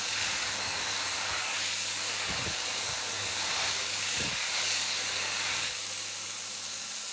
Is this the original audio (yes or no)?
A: no